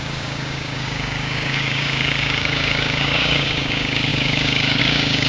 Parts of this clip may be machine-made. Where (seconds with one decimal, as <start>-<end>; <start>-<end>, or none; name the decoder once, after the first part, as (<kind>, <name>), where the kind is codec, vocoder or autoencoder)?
0.0-5.3 (codec, DAC)